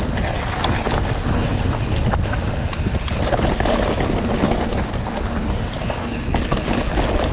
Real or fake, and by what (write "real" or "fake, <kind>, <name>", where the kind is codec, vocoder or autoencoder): real